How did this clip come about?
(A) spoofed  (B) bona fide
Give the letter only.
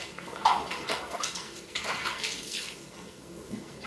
A